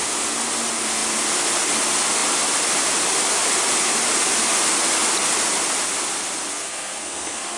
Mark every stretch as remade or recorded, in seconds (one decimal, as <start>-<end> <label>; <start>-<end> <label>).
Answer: 0.0-6.5 recorded; 6.5-7.6 remade